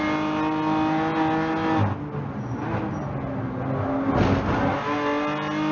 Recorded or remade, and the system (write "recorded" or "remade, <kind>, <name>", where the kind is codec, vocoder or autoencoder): recorded